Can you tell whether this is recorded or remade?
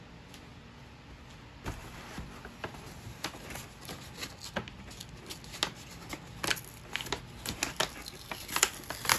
recorded